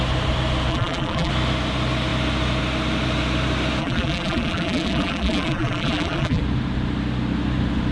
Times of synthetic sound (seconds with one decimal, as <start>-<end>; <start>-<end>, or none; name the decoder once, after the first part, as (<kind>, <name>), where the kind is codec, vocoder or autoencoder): 0.7-1.3 (vocoder, BigVGAN v2); 3.8-6.4